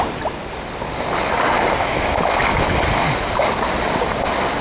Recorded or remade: recorded